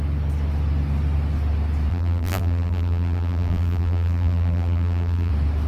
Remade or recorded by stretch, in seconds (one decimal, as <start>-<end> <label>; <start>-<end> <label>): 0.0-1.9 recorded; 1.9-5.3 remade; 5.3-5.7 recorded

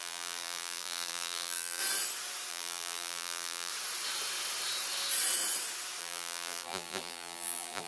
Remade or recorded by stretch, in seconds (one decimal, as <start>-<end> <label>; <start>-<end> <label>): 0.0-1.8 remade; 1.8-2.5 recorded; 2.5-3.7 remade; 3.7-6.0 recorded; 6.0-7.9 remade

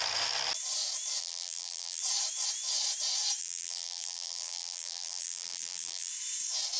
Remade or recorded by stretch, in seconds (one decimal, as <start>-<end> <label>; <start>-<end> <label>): 0.0-1.2 recorded; 1.2-2.0 remade; 2.0-3.4 recorded; 3.4-6.1 remade; 6.1-6.8 recorded